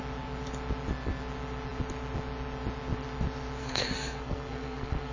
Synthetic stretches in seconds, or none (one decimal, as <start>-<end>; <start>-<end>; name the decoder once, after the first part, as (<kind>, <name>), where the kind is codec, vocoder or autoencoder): 3.6-5.1 (codec, SNAC)